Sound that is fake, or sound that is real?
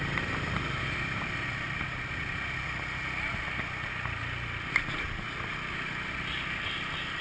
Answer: real